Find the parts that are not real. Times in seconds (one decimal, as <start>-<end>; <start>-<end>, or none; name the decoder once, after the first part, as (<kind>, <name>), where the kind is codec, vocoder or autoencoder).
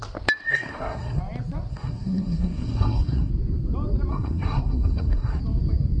0.5-1.2 (codec, SNAC); 1.7-3.3; 4.1-5.4